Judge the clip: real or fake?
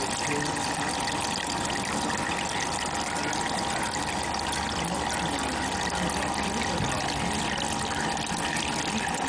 real